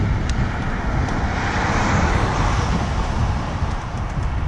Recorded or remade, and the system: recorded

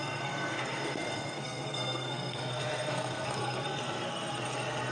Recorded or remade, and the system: remade, codec, SNAC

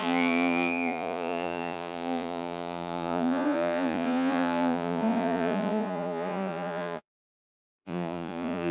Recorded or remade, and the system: remade, vocoder, Vocos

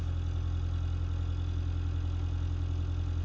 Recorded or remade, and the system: recorded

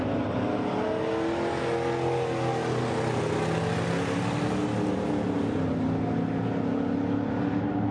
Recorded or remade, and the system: recorded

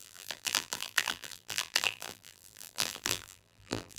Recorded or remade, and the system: remade, vocoder, BigVGAN v2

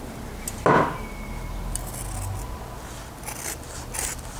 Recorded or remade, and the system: recorded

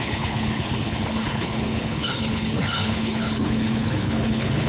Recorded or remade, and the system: remade, codec, HILCodec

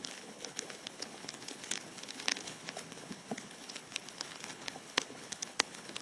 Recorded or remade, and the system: remade, codec, HILCodec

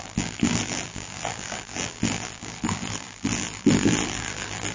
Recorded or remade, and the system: remade, vocoder, BigVGAN v2